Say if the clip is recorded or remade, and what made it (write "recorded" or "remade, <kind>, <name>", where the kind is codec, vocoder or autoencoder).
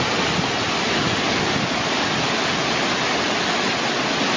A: recorded